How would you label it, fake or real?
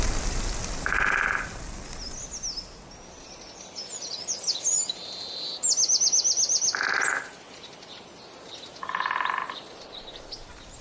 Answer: real